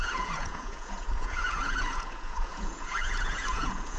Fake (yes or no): yes